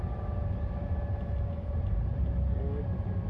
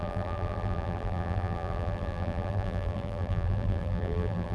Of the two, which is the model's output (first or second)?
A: second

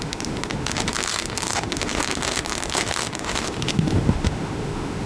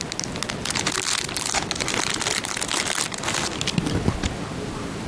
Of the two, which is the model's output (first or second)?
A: first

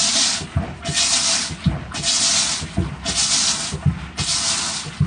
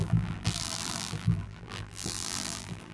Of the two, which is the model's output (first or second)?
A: second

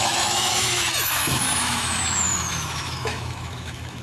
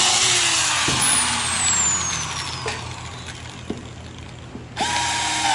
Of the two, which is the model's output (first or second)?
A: first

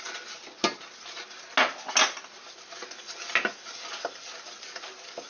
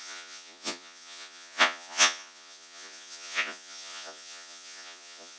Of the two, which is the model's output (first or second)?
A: second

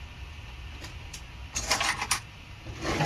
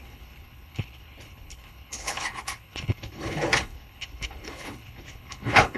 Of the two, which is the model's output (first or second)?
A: second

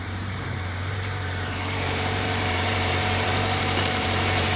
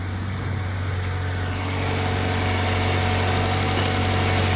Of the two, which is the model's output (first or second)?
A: first